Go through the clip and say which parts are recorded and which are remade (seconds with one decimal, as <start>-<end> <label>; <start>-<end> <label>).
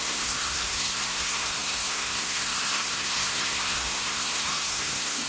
0.0-5.3 remade